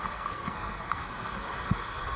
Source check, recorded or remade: remade